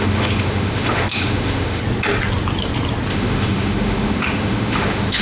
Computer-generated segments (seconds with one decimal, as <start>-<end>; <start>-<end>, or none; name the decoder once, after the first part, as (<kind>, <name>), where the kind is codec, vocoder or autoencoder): 0.0-1.8 (autoencoder, DAC-VAE); 3.1-5.2